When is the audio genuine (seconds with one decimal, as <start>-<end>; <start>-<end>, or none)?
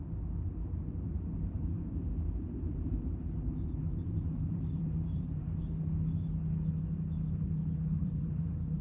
0.0-0.6; 5.6-8.0